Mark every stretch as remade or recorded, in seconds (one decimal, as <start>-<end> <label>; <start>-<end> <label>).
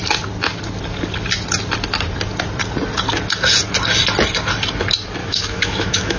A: 0.0-5.2 recorded; 5.2-6.2 remade